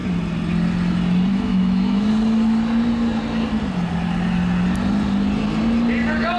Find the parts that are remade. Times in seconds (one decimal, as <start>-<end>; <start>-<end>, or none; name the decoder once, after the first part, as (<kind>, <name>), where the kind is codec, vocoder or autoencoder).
1.3-2.1 (autoencoder, DAC-VAE)